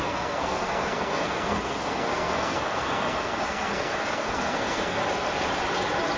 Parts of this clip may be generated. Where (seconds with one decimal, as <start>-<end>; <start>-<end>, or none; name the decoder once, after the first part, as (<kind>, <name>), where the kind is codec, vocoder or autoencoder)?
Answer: 0.0-5.0 (codec, SNAC)